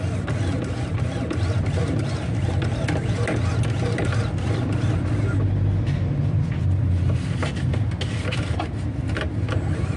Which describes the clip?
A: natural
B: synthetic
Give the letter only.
A